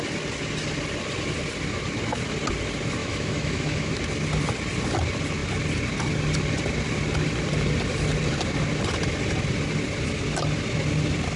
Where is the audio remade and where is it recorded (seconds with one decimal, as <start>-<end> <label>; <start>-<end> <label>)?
0.0-3.0 recorded; 3.0-3.9 remade; 3.9-11.4 recorded